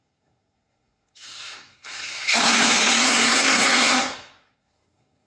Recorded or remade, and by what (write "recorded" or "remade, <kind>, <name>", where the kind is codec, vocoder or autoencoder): remade, codec, SNAC